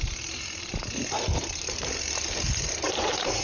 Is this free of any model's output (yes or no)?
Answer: no